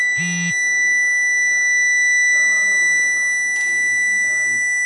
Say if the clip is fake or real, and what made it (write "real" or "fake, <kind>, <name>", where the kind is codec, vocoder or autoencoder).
real